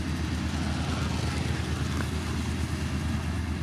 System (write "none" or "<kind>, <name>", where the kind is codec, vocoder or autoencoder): none